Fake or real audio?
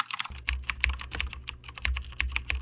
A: real